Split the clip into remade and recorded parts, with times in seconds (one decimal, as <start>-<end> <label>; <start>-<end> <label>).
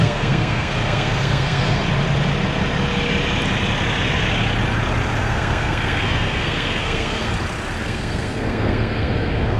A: 0.0-1.8 remade; 1.8-5.2 recorded; 5.2-7.3 remade; 7.3-7.8 recorded; 7.8-9.6 remade